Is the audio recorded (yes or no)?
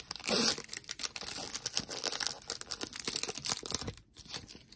yes